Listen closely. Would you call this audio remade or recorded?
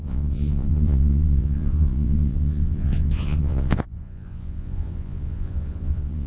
remade